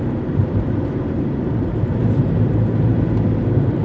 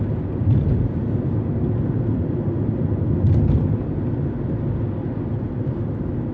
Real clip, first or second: second